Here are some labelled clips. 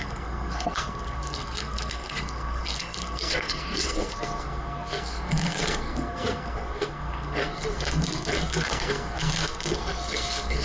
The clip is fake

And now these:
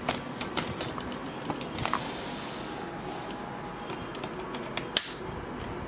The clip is real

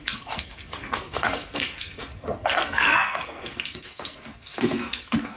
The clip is fake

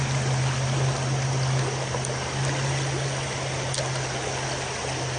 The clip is real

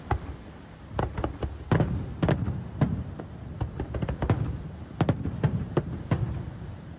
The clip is real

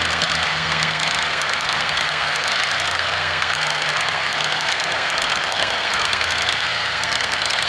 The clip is fake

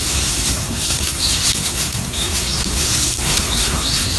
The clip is fake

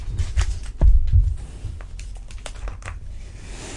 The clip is real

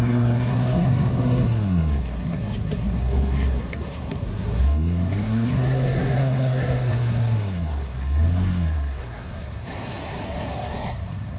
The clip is fake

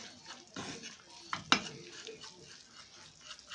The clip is real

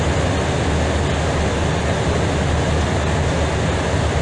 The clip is real